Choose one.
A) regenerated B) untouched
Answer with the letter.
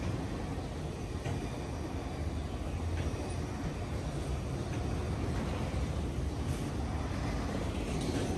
B